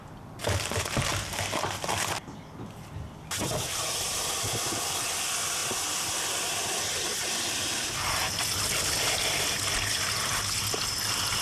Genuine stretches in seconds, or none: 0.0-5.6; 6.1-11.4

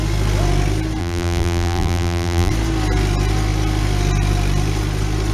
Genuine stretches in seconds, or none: 0.0-1.0; 2.5-5.3

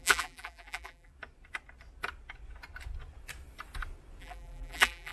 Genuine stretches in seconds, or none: 1.1-4.2

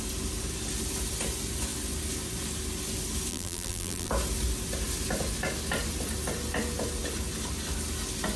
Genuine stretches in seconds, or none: 0.0-3.3; 4.1-8.4

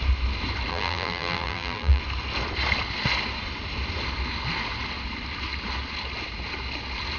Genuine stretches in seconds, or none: 0.0-0.7; 2.0-7.2